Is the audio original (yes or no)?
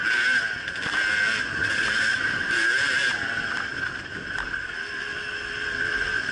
yes